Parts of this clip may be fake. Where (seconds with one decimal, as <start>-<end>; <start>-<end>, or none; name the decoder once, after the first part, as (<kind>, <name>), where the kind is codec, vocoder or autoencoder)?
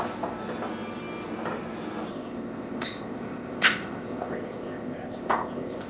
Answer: 2.1-5.9 (codec, ZipCodec)